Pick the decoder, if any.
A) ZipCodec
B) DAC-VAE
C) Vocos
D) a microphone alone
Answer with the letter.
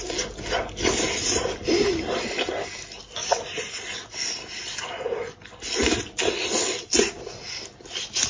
D